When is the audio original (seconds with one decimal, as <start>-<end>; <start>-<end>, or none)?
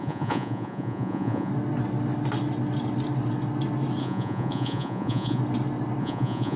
1.5-4.0; 5.4-6.0